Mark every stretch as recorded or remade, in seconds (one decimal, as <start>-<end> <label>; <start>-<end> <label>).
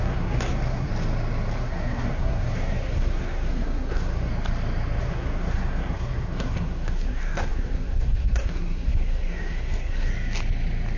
0.0-0.9 remade; 0.9-1.6 recorded; 1.6-4.3 remade; 4.3-5.0 recorded; 5.0-10.1 remade; 10.1-11.0 recorded